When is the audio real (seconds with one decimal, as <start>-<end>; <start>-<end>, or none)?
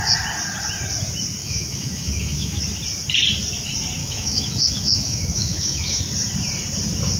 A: 0.0-1.4; 2.6-4.0; 6.0-7.2